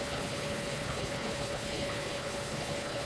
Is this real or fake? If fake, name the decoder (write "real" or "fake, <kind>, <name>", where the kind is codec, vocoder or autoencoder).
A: fake, codec, HILCodec